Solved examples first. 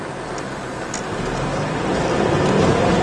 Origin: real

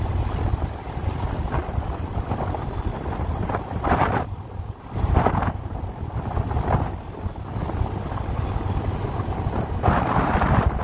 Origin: real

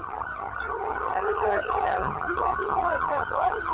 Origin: fake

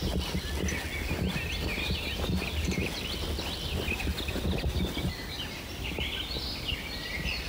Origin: real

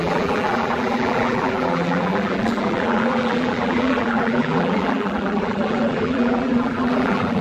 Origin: fake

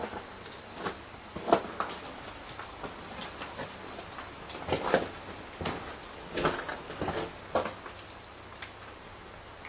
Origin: real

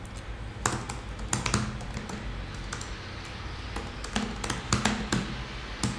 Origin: real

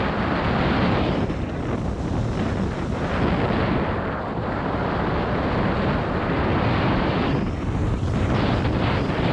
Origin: real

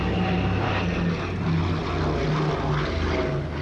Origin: real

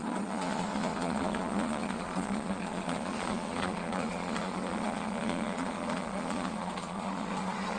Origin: fake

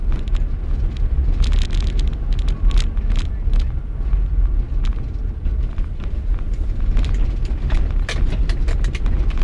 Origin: real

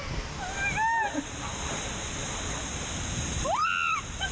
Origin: real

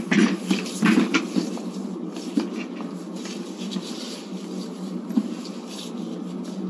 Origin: fake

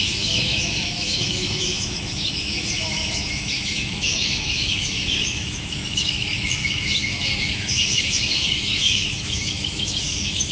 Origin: fake